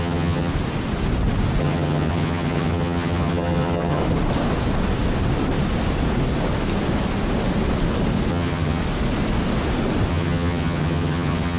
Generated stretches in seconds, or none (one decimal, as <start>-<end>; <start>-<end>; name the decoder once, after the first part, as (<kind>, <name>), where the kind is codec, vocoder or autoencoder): 0.0-0.5 (vocoder, HiFi-GAN); 1.6-4.0; 8.3-8.8; 10.1-11.6